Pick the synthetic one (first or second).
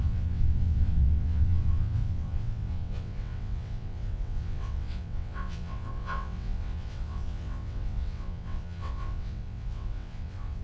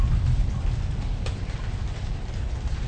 first